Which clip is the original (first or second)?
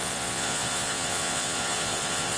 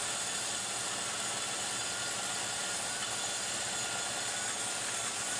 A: second